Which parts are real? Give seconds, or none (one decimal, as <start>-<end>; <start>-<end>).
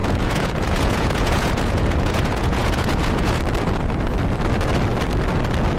3.4-5.8